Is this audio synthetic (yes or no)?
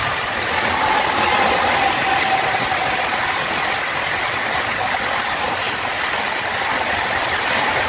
no